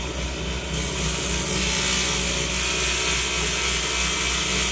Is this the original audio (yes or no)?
yes